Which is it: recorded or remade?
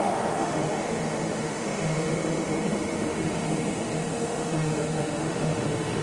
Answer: remade